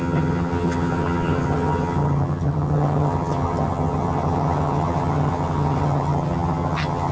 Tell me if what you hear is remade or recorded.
remade